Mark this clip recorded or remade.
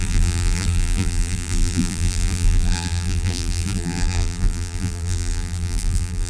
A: remade